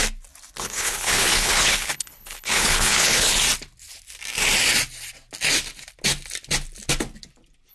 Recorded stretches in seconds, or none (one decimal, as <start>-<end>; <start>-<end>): 0.0-0.6; 3.3-7.7